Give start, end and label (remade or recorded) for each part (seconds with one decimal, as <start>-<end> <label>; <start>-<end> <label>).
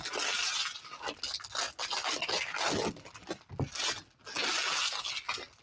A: 0.0-5.6 recorded